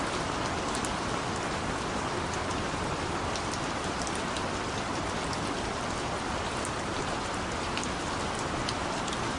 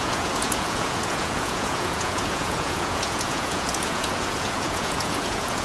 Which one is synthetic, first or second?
second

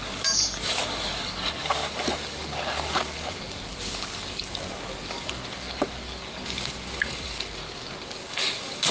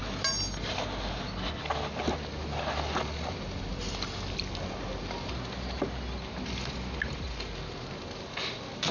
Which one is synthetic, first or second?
first